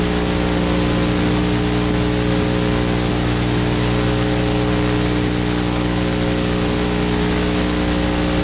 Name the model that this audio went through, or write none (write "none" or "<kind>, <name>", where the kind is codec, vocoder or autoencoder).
none